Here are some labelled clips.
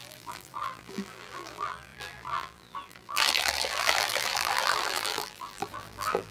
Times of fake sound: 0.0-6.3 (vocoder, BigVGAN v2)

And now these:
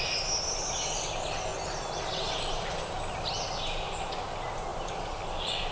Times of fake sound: none

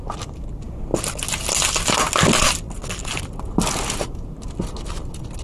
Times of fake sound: none

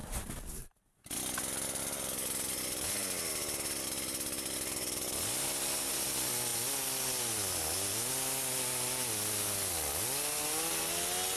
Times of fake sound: none

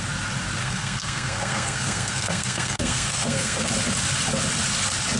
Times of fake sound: 0.6-3.7 (codec, SNAC)